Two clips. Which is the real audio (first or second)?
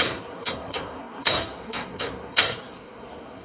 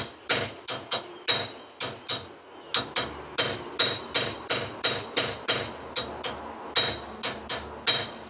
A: second